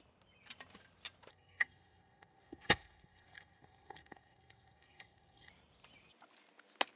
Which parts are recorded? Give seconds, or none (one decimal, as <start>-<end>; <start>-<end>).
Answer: 0.0-1.3; 5.5-7.0